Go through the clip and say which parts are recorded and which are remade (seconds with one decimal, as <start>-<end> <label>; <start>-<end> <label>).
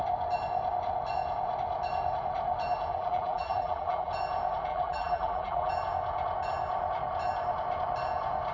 0.0-2.9 recorded; 2.9-4.1 remade; 4.1-4.7 recorded; 4.7-5.7 remade; 5.7-8.5 recorded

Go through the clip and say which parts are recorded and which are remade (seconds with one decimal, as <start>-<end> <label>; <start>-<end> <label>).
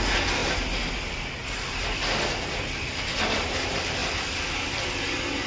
0.0-5.5 recorded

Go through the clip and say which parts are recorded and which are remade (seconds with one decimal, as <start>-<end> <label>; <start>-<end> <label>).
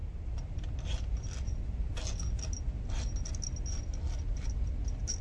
0.0-5.2 recorded